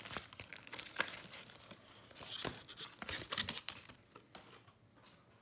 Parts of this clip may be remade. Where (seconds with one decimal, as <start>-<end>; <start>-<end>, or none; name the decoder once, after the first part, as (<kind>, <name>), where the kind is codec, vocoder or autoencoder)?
none